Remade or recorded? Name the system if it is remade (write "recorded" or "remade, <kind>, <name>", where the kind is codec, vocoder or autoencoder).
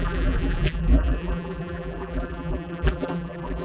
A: remade, vocoder, BigVGAN v2